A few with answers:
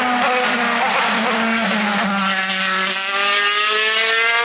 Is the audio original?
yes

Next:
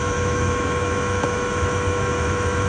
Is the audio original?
no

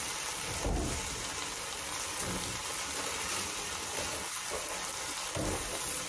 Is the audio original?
yes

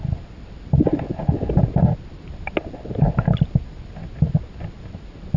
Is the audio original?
yes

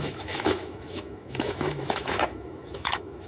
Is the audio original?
no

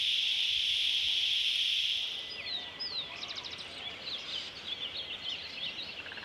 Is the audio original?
yes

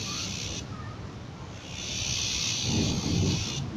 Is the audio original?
yes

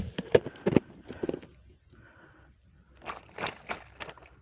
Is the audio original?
yes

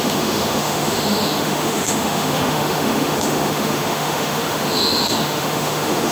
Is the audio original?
no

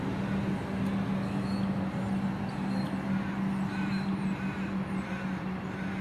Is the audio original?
yes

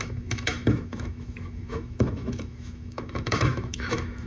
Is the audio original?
no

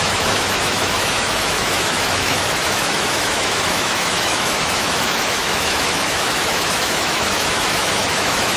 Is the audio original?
no